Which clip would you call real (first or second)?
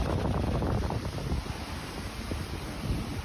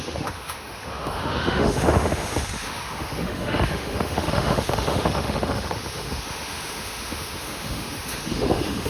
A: first